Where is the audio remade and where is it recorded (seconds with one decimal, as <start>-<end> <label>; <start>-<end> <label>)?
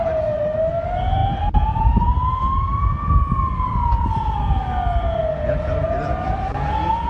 0.0-7.1 recorded